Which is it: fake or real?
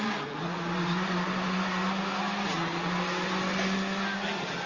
real